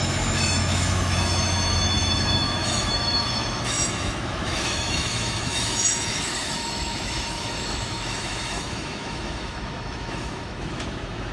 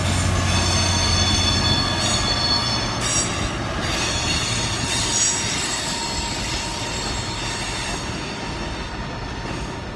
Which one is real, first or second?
second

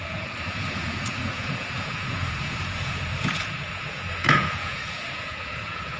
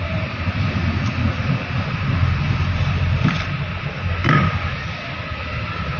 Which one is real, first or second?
second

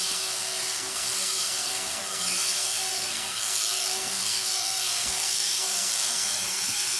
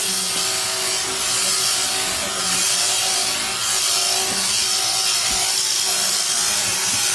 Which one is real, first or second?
second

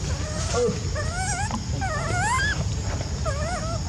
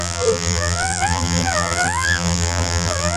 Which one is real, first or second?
first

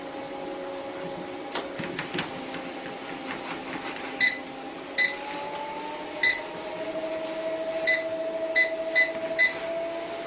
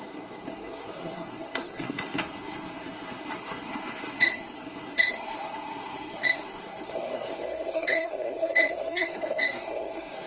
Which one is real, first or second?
first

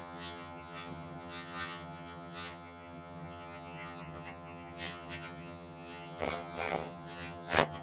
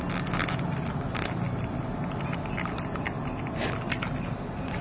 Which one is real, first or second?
second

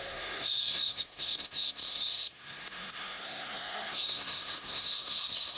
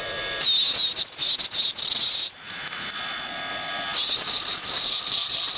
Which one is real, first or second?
second